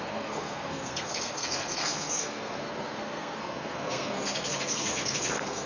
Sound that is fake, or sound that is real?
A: fake